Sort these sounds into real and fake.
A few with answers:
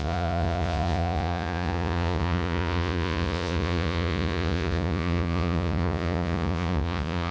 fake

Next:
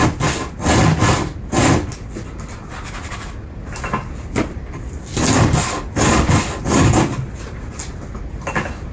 real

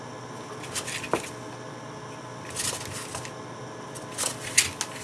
real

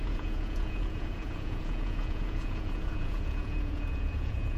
fake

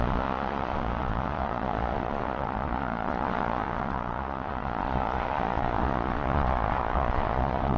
fake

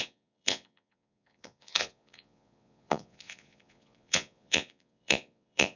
fake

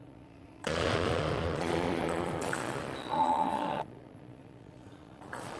fake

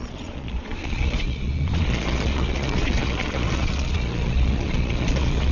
fake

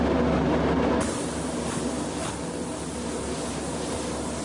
real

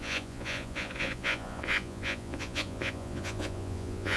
fake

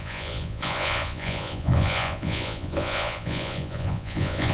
fake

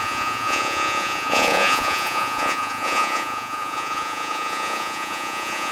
fake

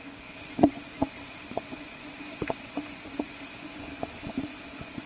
fake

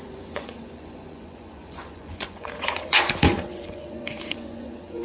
fake